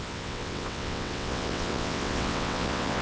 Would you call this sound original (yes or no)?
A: no